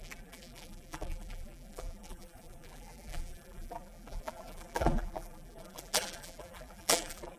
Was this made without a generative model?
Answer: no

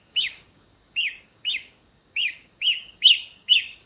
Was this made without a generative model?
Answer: no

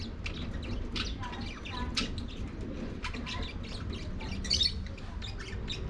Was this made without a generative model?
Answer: yes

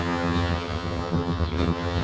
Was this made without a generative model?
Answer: no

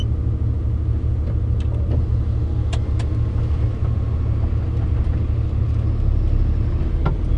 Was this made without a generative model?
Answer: yes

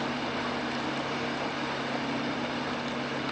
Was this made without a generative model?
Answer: yes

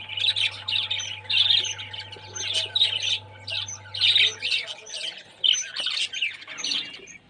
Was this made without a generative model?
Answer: yes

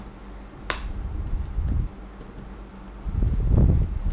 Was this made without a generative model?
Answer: yes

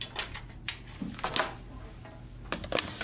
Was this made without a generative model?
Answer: yes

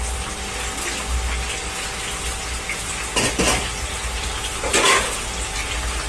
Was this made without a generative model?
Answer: yes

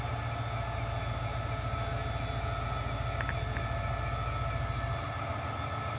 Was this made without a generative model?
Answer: yes